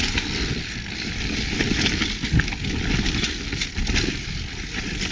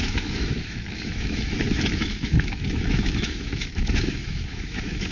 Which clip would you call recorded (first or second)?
first